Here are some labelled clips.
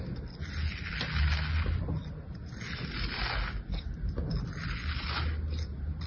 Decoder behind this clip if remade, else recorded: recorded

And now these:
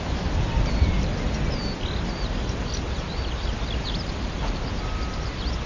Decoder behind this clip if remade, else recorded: recorded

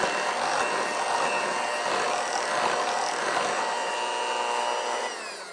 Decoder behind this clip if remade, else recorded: recorded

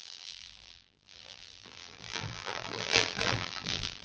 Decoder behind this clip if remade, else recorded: remade, vocoder, BigVGAN v2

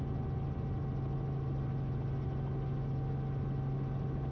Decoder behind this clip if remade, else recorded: recorded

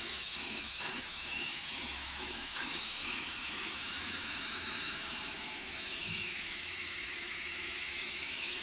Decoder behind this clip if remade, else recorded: remade, autoencoder, DAC-VAE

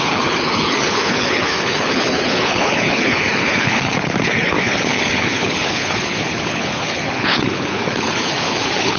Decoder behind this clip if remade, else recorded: remade, codec, HILCodec